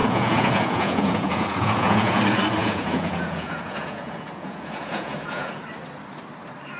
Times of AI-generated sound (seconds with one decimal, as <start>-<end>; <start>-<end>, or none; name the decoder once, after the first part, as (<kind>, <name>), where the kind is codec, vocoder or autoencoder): 0.0-2.2 (vocoder, Vocos); 2.6-5.6